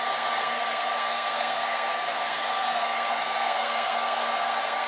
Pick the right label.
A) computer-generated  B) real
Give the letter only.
A